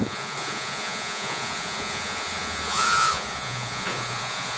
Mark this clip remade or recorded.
remade